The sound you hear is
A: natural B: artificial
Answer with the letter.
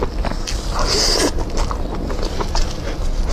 A